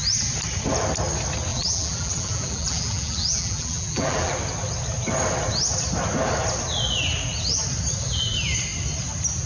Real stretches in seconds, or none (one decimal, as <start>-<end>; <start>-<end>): 0.0-1.5; 4.3-9.5